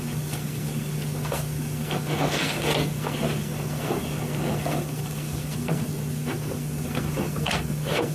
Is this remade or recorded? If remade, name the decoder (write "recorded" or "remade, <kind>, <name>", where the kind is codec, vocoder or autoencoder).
remade, codec, SNAC